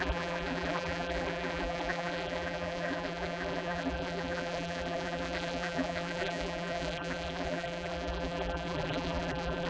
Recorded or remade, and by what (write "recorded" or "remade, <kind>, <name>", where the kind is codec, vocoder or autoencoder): remade, vocoder, BigVGAN v2